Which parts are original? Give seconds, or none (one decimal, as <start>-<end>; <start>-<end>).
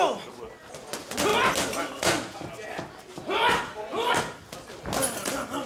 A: 0.0-5.7